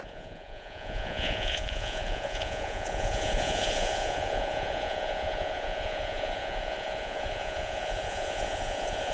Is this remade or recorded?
remade